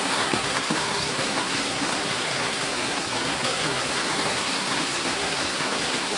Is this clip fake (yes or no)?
yes